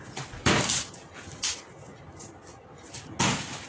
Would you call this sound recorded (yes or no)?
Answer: yes